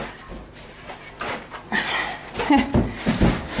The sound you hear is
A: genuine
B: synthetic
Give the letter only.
A